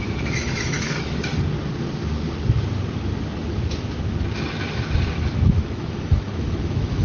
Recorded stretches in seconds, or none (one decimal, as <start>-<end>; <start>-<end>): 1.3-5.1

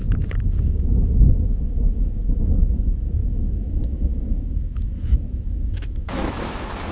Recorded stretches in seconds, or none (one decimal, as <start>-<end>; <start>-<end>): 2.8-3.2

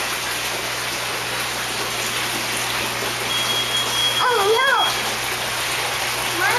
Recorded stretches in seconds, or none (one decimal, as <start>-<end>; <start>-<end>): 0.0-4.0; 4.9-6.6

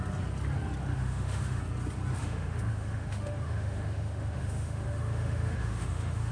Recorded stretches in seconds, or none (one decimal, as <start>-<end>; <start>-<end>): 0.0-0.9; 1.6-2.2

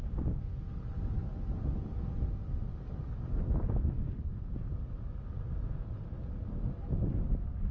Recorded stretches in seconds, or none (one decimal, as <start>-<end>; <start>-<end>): 0.0-7.7

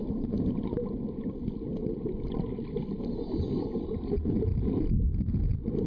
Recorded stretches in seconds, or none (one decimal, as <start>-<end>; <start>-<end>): 0.0-5.9

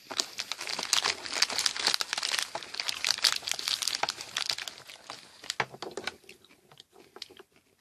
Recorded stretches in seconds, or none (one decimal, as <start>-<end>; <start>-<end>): 0.0-7.8